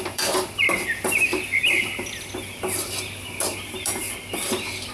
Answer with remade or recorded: remade